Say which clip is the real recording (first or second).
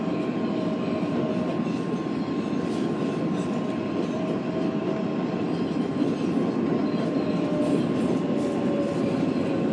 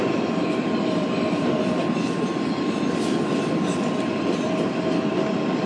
first